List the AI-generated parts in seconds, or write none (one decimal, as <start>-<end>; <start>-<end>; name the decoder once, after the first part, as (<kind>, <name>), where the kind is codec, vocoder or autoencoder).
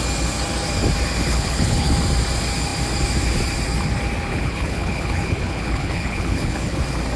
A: 1.3-1.9 (codec, HILCodec); 4.3-6.8